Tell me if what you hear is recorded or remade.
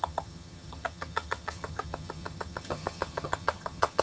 remade